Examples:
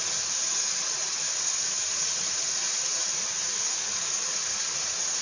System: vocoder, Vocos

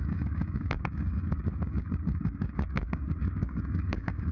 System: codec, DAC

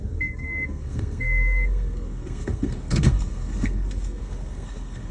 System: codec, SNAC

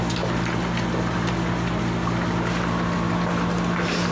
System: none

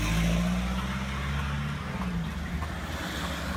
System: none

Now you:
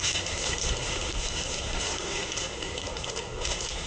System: codec, SNAC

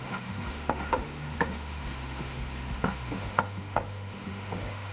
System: autoencoder, DAC-VAE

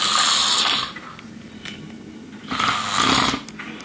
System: none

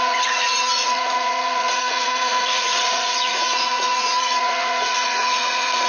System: vocoder, Vocos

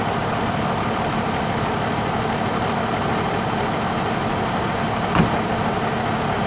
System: none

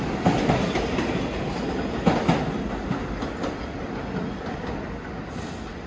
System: none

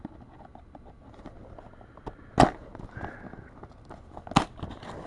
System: none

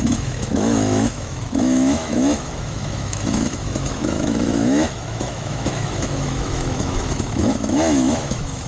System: autoencoder, DAC-VAE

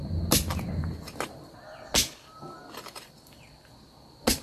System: none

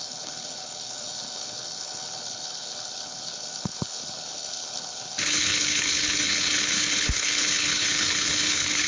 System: codec, HILCodec